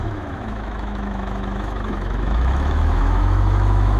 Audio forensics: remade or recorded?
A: remade